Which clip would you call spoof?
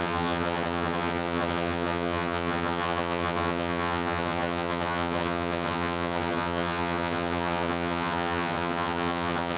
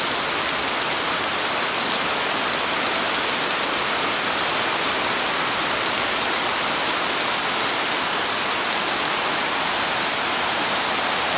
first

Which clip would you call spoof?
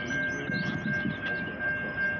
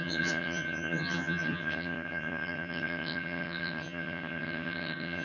second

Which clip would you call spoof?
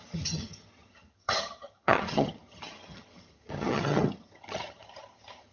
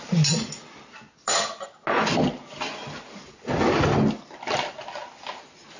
first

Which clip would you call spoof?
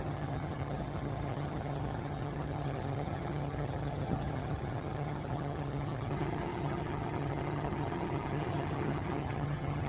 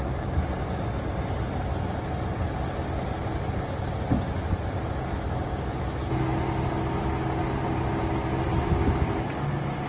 first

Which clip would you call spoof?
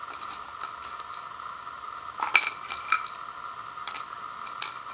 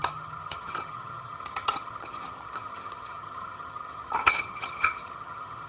second